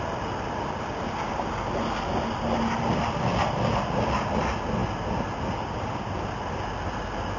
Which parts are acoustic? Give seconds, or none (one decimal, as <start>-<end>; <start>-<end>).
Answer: 0.0-7.4